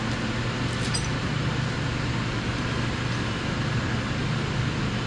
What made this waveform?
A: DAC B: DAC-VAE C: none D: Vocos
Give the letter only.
C